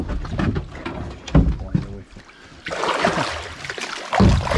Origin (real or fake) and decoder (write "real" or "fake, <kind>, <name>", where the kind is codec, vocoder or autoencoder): real